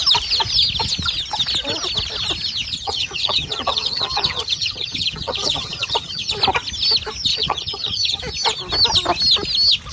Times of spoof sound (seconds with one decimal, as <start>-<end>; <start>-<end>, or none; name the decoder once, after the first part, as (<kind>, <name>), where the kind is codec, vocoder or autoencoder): 2.7-6.3 (vocoder, HiFi-GAN); 7.3-8.2